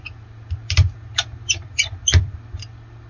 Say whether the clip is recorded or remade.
recorded